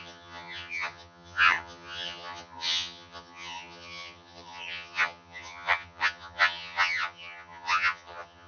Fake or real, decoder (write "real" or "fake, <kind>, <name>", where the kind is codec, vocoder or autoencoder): fake, vocoder, HiFi-GAN